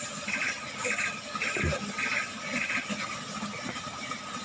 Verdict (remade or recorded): recorded